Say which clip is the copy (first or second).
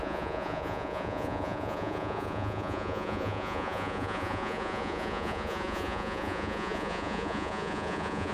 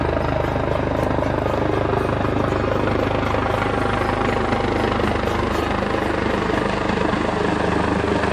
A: first